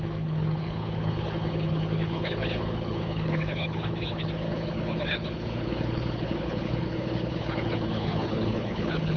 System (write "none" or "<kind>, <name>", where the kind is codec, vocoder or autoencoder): codec, HILCodec